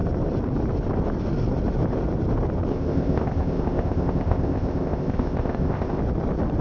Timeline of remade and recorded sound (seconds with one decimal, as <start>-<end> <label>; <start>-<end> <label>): 0.0-2.7 recorded; 2.7-6.0 remade; 6.0-6.6 recorded